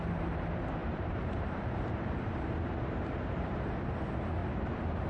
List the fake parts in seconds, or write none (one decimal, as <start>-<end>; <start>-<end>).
0.8-3.9; 4.4-5.1